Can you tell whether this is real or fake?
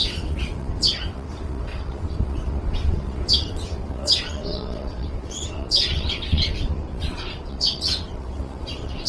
fake